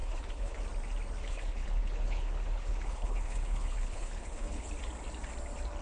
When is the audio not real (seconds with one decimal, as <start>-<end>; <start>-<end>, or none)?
0.0-0.6; 1.2-4.7